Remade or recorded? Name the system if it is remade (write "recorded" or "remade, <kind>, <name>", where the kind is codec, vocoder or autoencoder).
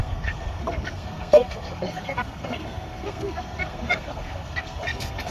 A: remade, codec, SNAC